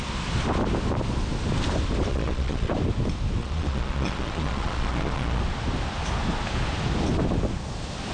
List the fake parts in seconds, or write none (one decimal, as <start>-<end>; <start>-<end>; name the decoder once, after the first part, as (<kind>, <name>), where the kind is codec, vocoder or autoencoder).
2.1-2.7 (vocoder, Vocos); 3.4-5.4